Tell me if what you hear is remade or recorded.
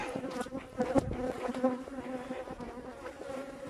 recorded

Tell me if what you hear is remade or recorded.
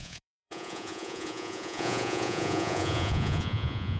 remade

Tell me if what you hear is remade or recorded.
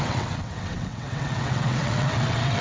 remade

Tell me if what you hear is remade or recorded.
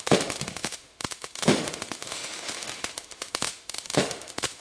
remade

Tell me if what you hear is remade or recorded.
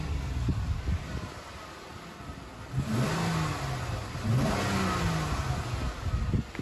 recorded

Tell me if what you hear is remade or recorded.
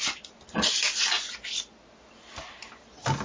recorded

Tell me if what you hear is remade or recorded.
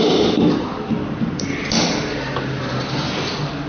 recorded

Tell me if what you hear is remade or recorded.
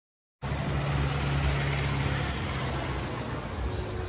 recorded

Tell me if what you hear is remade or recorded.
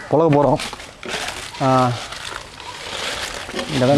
recorded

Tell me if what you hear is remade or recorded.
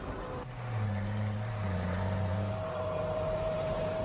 remade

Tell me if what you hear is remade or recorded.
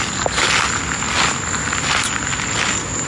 recorded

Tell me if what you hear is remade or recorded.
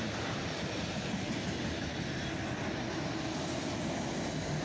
recorded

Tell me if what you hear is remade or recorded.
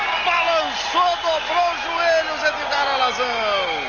recorded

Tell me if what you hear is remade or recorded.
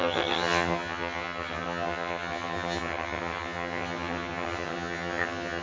remade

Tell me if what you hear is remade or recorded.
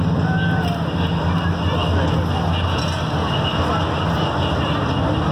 recorded